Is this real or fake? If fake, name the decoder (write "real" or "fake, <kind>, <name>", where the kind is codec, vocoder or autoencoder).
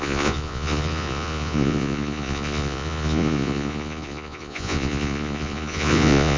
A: fake, vocoder, Vocos